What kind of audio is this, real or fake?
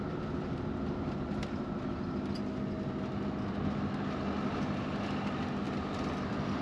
real